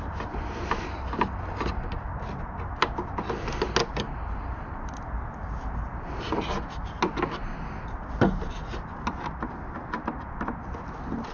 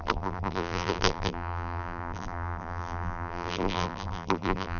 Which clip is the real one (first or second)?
first